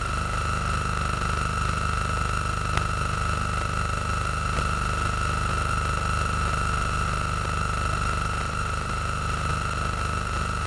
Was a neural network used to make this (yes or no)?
no